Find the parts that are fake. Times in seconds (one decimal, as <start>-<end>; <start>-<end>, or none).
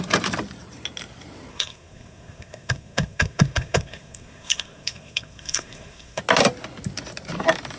1.5-6.2